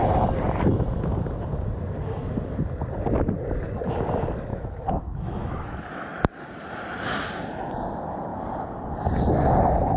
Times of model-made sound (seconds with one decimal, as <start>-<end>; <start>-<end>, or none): 4.5-6.2